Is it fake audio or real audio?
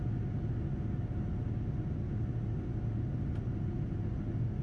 real